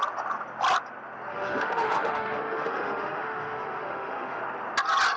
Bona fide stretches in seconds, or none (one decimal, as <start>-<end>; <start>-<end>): 0.0-1.3; 4.4-5.2